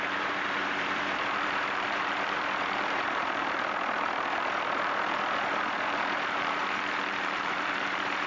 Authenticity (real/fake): fake